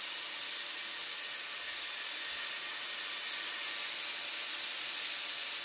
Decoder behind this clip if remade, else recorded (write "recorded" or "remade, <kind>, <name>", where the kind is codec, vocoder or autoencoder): recorded